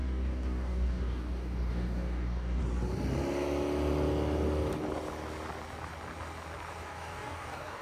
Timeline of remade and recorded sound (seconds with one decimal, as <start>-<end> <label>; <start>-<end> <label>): 0.0-2.6 remade; 2.6-6.8 recorded; 6.8-7.8 remade

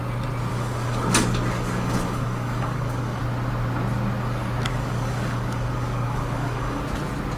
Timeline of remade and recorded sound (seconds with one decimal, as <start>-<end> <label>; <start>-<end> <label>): 0.0-0.5 recorded; 0.5-3.2 remade; 3.2-4.7 recorded; 4.7-6.8 remade; 6.8-7.4 recorded

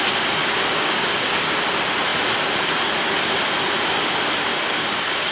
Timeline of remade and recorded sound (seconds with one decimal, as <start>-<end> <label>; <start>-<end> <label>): 0.0-0.4 recorded; 0.4-1.3 remade; 1.3-4.5 recorded; 4.5-5.3 remade

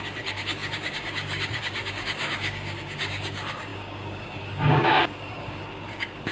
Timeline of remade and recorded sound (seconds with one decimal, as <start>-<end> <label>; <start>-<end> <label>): 0.0-6.3 remade